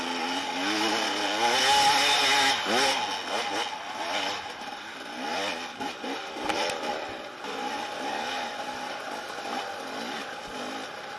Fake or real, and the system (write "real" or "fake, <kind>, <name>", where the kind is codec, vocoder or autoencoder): real